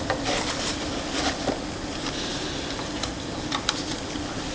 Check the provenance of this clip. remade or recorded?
recorded